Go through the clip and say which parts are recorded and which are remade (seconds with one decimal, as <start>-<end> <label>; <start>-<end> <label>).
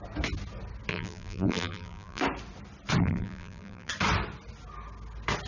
0.0-0.9 recorded; 0.9-2.2 remade; 2.2-3.0 recorded; 3.0-3.9 remade; 3.9-5.5 recorded